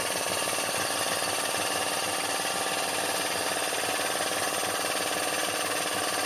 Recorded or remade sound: recorded